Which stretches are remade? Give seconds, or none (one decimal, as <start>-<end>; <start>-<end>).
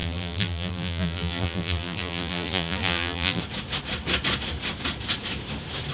0.0-3.4